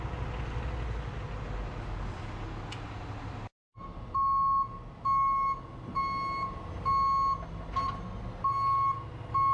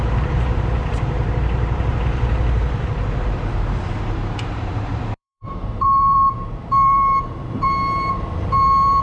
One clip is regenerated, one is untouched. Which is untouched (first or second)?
first